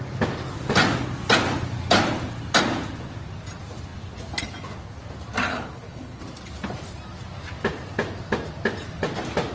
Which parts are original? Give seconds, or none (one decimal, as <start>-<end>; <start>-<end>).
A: 0.0-5.5; 6.2-9.5